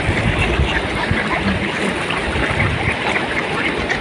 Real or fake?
real